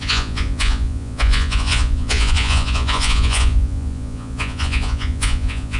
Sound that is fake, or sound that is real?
fake